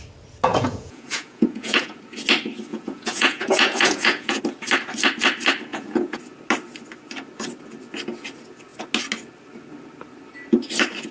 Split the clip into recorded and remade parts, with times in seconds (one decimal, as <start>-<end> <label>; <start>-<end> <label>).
0.0-0.5 recorded; 0.5-2.0 remade; 2.0-2.7 recorded; 2.7-4.4 remade; 4.4-5.7 recorded; 5.7-6.2 remade; 6.2-11.1 recorded